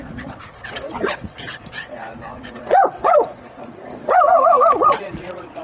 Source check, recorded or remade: remade